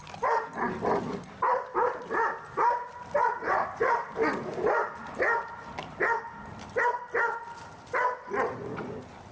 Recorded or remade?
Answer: recorded